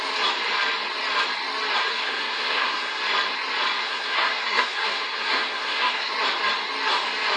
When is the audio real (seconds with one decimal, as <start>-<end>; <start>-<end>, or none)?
0.0-1.9; 3.0-3.8; 6.1-7.4